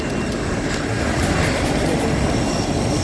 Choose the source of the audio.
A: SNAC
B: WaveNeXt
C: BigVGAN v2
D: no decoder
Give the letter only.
D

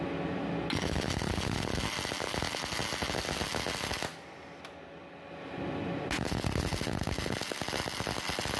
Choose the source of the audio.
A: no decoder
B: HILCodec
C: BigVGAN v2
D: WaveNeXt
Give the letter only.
A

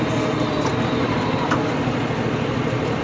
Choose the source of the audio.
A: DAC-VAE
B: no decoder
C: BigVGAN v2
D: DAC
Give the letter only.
B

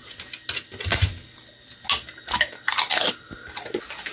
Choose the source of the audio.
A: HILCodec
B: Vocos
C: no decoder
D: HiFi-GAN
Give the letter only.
C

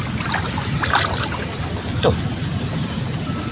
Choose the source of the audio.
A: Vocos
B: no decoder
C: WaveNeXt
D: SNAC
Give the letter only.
B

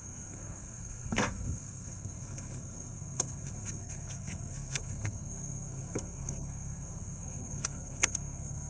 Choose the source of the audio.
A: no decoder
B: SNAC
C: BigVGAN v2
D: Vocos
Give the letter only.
B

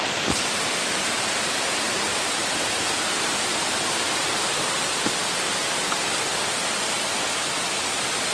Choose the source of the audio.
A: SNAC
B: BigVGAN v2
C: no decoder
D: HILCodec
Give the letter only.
C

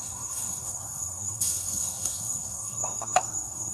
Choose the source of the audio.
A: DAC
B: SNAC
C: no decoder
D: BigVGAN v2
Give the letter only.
B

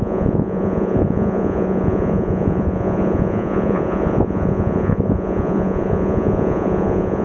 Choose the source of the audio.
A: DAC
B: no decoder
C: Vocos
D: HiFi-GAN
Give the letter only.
C